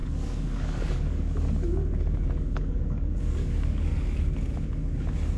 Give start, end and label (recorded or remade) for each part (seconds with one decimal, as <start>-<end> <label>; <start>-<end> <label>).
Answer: 0.0-3.9 remade; 3.9-5.4 recorded

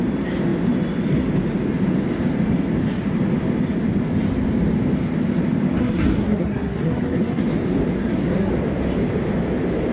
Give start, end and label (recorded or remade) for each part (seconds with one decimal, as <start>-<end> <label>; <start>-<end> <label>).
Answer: 0.0-5.8 recorded; 5.8-7.4 remade; 7.4-8.0 recorded; 8.0-8.5 remade; 8.5-9.9 recorded

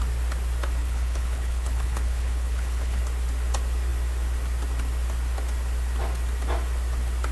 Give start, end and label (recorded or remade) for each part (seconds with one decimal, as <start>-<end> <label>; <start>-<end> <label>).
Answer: 0.0-0.8 recorded; 0.8-3.0 remade; 3.0-7.3 recorded

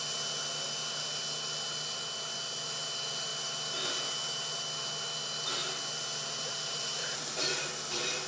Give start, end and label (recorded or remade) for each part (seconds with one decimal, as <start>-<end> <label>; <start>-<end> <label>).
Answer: 0.0-6.1 recorded; 6.1-7.7 remade; 7.7-8.3 recorded

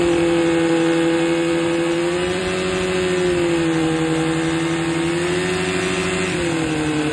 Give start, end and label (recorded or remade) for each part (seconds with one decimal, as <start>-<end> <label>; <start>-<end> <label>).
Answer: 0.0-7.1 recorded

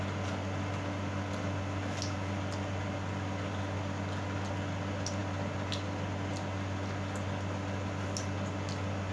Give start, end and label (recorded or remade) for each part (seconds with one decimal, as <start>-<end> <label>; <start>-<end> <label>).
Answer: 0.0-9.1 recorded

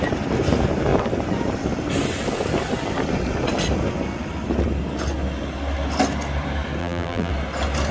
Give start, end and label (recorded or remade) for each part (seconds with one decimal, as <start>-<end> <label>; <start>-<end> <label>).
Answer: 0.0-6.8 recorded; 6.8-7.3 remade; 7.3-7.9 recorded

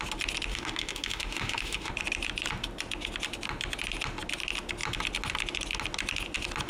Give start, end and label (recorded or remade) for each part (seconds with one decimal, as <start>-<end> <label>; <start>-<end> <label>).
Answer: 0.0-0.5 recorded; 0.5-1.9 remade; 1.9-6.7 recorded